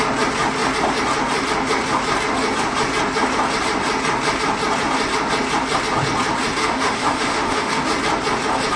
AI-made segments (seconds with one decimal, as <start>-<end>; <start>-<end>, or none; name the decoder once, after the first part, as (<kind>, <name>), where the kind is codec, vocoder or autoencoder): 6.6-7.8 (autoencoder, DAC-VAE)